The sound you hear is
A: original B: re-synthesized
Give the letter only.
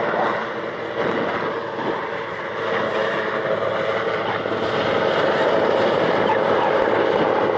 A